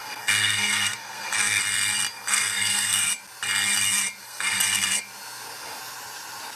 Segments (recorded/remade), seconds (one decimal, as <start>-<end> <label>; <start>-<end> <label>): 0.0-1.6 remade; 1.6-2.1 recorded; 2.1-3.1 remade; 3.1-4.2 recorded; 4.2-5.0 remade; 5.0-6.6 recorded